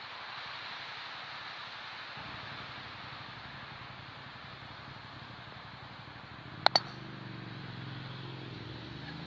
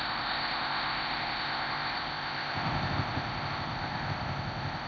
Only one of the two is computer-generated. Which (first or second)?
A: second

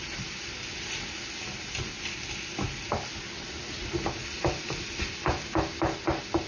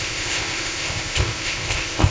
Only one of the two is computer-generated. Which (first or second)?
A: second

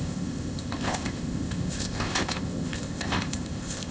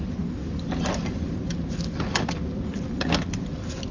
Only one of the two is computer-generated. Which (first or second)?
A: first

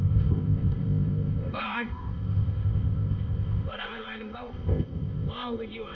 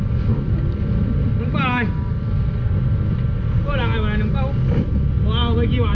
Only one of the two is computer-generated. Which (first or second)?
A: first